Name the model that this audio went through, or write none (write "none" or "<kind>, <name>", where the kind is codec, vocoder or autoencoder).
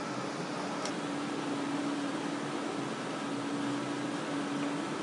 none